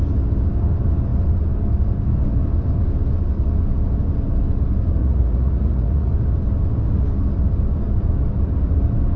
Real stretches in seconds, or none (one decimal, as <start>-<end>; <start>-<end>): 0.0-5.0; 6.1-9.2